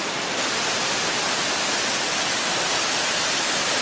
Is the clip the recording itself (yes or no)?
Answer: yes